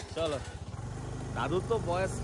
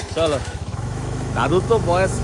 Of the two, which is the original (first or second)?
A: first